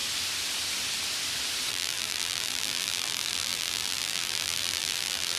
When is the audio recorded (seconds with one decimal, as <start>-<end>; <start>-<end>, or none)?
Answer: 0.0-1.7